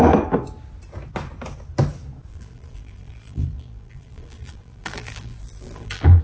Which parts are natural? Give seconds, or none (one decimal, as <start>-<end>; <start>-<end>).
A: 0.0-2.3